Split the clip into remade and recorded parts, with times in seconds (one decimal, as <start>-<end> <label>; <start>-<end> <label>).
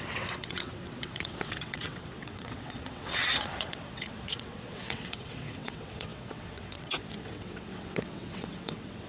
0.0-9.1 remade